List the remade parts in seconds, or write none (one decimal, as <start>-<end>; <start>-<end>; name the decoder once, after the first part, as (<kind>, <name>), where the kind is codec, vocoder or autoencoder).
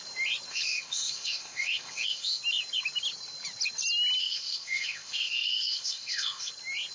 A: 0.5-2.4 (codec, ZipCodec); 4.2-6.5